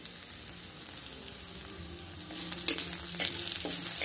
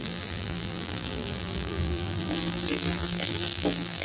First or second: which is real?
first